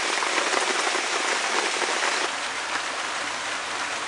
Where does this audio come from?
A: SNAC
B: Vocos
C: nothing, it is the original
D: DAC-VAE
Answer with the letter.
C